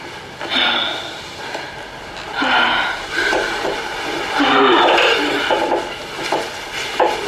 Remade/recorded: recorded